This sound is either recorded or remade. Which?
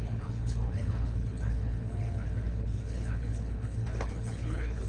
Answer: remade